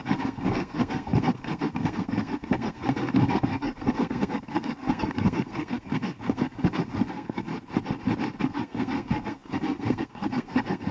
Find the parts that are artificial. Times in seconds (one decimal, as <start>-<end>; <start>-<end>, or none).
0.0-7.5; 8.4-10.9